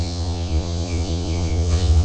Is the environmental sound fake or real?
fake